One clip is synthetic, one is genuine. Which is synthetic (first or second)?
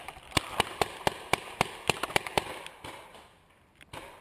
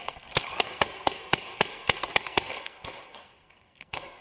second